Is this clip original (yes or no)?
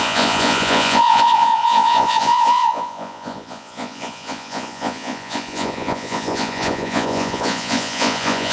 no